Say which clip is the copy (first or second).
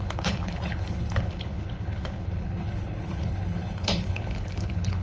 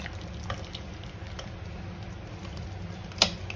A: first